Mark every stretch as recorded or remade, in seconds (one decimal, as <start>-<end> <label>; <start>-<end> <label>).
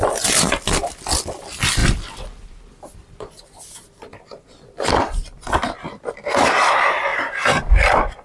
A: 0.0-8.2 recorded